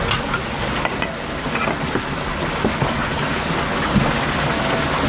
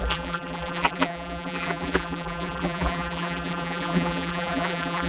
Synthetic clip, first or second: second